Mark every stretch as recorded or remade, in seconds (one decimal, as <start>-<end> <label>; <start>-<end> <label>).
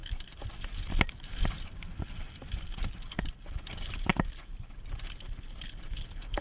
0.0-6.4 recorded